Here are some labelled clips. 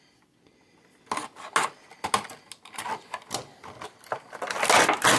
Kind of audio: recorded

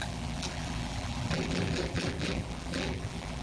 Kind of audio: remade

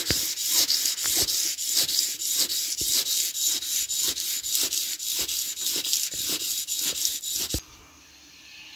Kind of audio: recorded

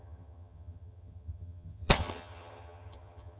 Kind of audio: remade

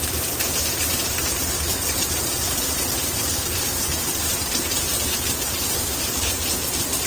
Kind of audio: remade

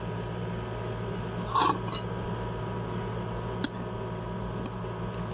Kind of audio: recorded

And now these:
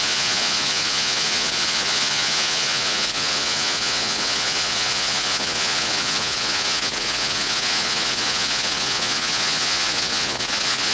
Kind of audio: remade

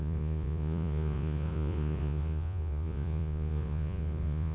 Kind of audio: remade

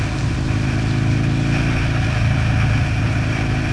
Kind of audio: recorded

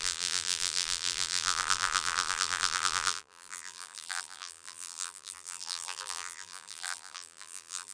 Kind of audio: remade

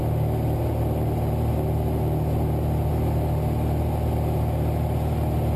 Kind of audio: recorded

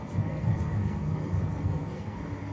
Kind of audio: remade